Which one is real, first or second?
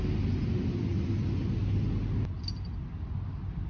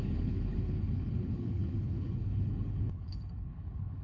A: first